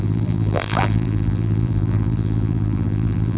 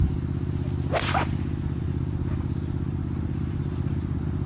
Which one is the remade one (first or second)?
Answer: first